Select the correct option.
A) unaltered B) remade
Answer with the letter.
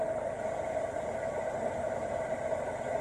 A